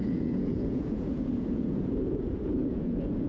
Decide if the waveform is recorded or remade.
remade